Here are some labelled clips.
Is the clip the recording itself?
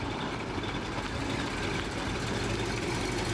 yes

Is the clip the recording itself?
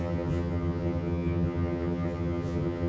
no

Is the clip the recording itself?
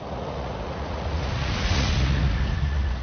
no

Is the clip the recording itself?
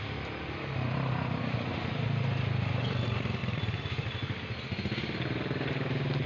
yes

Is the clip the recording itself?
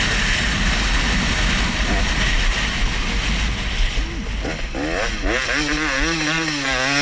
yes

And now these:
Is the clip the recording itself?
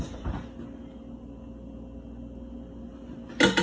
yes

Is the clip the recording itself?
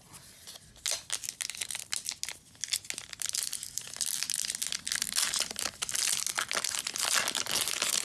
yes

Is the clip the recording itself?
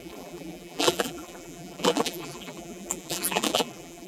no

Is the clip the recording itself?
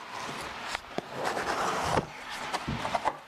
no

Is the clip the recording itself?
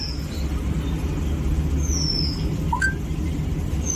yes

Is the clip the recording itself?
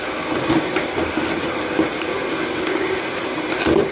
yes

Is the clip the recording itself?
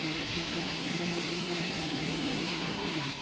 no